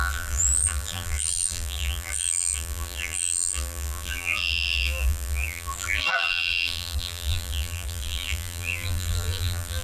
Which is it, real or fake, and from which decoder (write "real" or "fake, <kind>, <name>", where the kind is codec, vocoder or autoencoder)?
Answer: fake, vocoder, BigVGAN v2